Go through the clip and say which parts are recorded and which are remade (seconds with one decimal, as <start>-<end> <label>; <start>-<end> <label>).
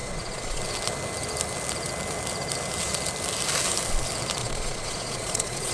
0.0-0.6 remade; 0.6-4.4 recorded; 4.4-5.7 remade